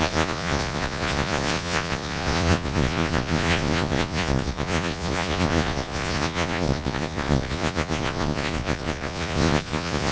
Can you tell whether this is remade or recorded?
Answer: remade